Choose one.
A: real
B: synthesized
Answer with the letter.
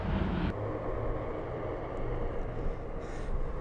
A